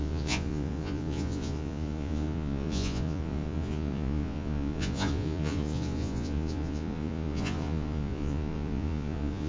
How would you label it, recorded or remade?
remade